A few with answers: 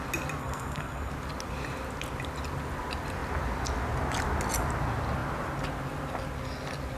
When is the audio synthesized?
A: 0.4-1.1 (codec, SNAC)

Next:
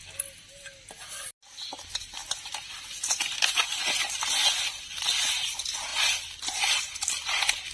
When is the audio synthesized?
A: none

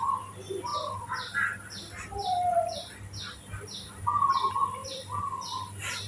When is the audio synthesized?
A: 0.7-1.5 (vocoder, BigVGAN v2); 3.5-4.0; 4.8-6.1

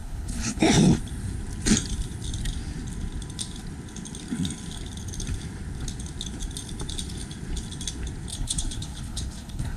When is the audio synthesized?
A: 0.0-0.6 (codec, HILCodec); 8.3-9.8

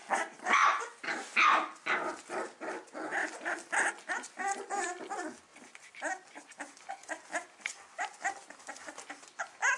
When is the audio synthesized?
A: none

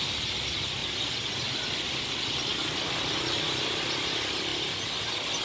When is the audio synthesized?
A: none